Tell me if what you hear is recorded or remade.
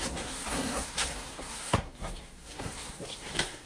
remade